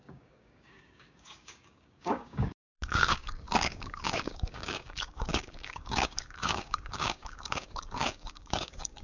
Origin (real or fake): fake